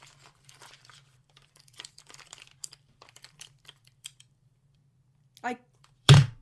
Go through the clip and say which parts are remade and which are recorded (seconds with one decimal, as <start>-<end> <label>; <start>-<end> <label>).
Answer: 0.0-4.8 remade; 4.8-5.8 recorded; 5.8-6.4 remade